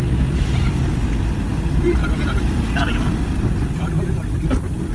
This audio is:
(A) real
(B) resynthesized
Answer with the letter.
A